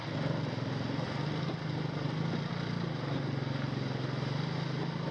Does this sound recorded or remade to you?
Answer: recorded